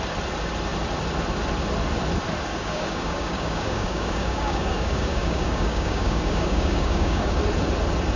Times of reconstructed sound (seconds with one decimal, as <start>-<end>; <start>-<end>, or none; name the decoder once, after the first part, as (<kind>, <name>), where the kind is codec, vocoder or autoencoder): 2.5-7.4 (codec, DAC)